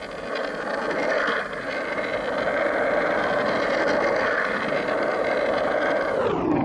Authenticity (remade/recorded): recorded